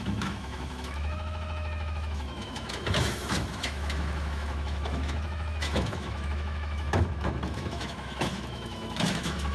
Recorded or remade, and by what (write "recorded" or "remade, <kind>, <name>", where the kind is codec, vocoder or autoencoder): remade, autoencoder, DAC-VAE